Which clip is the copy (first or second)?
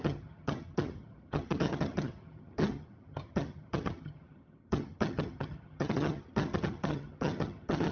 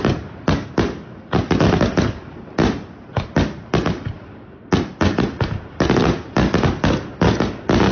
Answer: first